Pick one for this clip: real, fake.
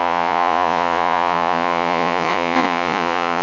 fake